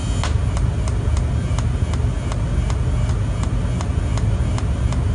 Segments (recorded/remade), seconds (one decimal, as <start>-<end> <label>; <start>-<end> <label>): 0.0-5.1 recorded